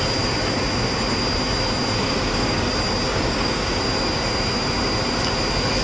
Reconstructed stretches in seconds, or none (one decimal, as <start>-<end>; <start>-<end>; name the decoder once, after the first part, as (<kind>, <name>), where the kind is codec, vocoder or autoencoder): 2.0-2.7 (codec, DAC); 3.1-3.8